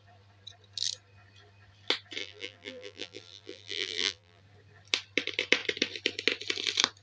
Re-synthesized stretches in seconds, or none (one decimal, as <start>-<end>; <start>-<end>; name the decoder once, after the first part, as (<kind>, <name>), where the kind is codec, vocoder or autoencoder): 2.2-4.4 (vocoder, BigVGAN v2)